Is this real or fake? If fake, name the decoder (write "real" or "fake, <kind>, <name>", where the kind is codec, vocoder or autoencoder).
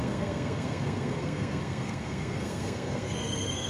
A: fake, codec, SNAC